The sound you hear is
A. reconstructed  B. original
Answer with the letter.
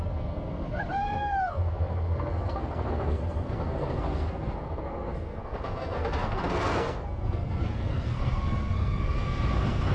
A